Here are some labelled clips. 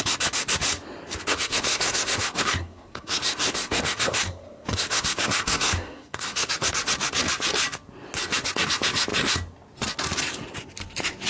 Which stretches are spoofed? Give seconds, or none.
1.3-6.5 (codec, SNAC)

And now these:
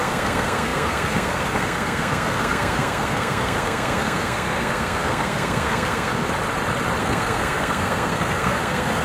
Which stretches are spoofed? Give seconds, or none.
0.0-6.1 (codec, SNAC); 7.0-9.0

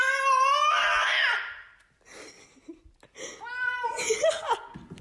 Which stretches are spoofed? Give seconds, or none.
none

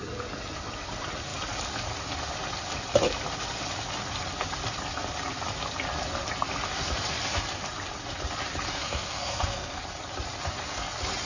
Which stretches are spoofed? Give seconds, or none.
8.8-9.8 (codec, SNAC)

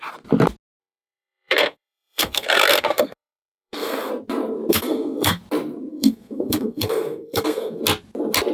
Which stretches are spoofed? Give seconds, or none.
0.8-4.1 (codec, SNAC); 4.7-5.4; 5.9-7.8

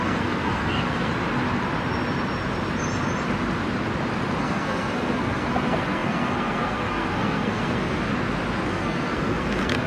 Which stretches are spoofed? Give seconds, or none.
0.0-1.1 (codec, SNAC); 4.4-8.1; 8.7-9.9

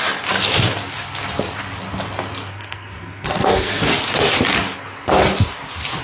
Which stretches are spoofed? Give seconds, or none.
2.5-3.8 (codec, SNAC)

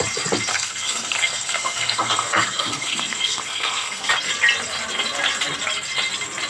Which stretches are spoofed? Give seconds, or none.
0.5-4.1 (codec, SNAC)